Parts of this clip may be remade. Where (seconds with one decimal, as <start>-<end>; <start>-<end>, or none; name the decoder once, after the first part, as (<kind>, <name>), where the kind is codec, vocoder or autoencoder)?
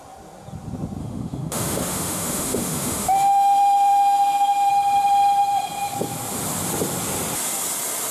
1.0-4.7 (autoencoder, DAC-VAE)